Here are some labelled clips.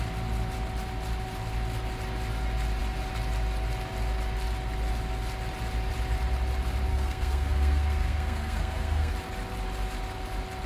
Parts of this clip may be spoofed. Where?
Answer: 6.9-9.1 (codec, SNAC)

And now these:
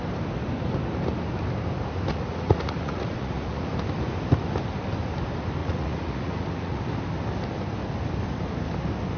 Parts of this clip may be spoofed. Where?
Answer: 2.1-3.7 (vocoder, Vocos); 5.6-6.8

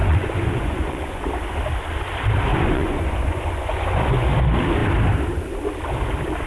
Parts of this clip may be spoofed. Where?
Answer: 0.0-1.2 (vocoder, Vocos); 2.5-4.1

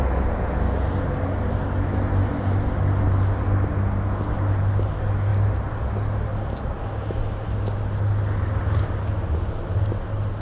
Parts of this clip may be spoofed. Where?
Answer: none

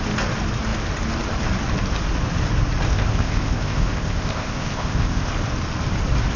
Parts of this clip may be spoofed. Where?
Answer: 2.9-5.3 (codec, ZipCodec)

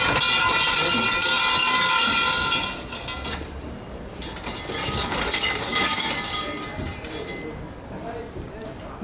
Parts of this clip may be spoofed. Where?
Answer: 4.8-6.1 (codec, DAC)